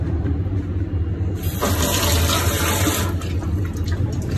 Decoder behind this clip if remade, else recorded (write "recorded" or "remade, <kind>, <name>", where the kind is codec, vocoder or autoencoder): recorded